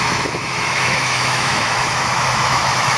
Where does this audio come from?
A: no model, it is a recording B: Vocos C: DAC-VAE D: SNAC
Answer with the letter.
C